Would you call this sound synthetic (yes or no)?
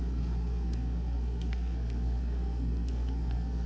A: yes